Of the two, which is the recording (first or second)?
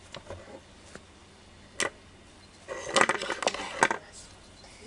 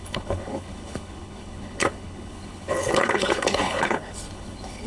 first